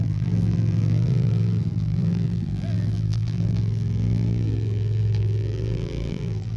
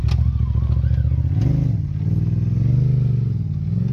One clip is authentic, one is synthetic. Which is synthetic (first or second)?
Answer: first